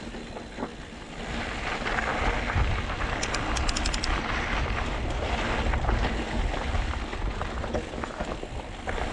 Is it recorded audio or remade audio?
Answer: recorded